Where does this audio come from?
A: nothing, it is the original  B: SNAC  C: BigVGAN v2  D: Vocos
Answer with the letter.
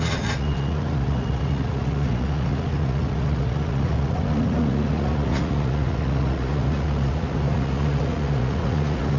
D